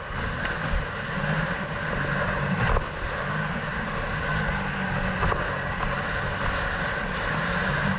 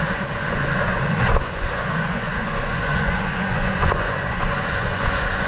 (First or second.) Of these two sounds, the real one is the first